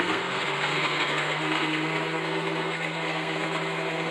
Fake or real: fake